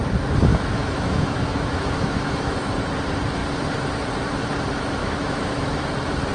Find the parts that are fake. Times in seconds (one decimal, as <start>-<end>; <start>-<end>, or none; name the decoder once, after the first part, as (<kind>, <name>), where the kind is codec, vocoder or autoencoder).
0.5-2.7 (autoencoder, DAC-VAE); 5.0-5.8